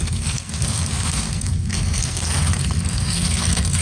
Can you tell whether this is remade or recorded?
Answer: remade